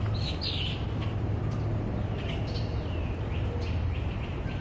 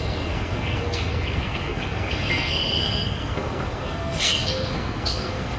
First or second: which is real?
first